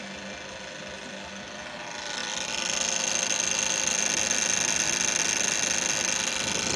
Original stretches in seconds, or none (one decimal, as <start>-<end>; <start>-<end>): 0.0-6.8